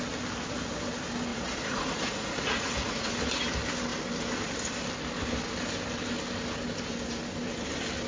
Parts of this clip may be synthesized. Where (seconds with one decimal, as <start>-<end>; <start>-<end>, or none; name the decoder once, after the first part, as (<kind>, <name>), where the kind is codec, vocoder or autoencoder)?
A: 1.3-3.1 (vocoder, Vocos)